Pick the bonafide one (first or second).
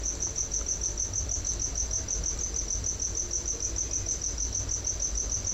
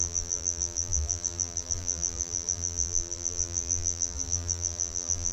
first